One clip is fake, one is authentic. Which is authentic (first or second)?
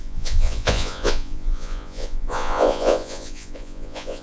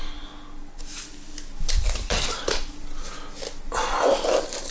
second